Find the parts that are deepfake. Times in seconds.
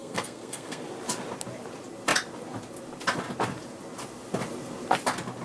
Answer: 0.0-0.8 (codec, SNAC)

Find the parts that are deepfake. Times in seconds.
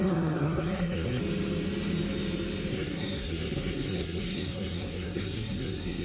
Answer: 0.0-1.2 (codec, SNAC); 2.7-6.0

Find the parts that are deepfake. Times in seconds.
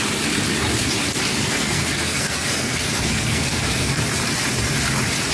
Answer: 1.3-4.0 (codec, SNAC)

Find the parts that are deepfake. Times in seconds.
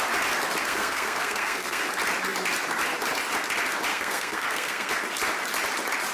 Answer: 0.6-1.8 (codec, SNAC); 3.9-4.9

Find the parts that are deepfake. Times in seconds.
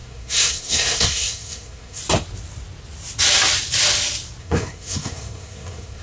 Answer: 0.0-2.0 (codec, SNAC); 4.4-6.0